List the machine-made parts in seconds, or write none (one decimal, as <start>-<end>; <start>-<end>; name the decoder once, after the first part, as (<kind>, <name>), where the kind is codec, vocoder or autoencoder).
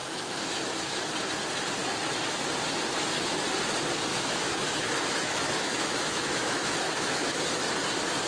0.0-1.0 (autoencoder, DAC-VAE); 4.1-7.4